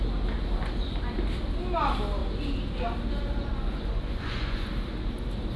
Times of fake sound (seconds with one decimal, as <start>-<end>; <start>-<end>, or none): 3.5-4.7